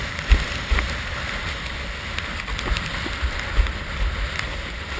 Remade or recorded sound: recorded